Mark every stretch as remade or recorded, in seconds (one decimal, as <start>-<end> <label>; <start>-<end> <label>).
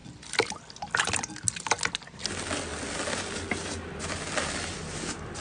0.0-5.4 recorded